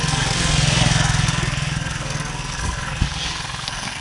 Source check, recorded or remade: remade